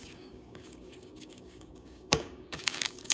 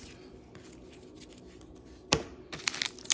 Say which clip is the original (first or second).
second